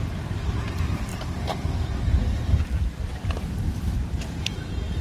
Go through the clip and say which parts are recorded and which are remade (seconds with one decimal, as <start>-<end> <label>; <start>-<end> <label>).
0.0-5.0 recorded